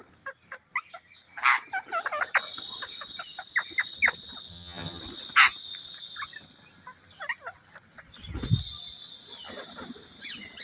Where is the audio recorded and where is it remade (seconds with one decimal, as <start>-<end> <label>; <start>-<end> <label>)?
0.0-4.5 recorded; 4.5-5.0 remade; 5.0-10.6 recorded